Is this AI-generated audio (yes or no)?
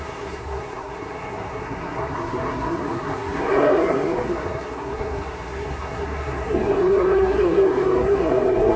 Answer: yes